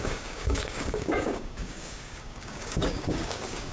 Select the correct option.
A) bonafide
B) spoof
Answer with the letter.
B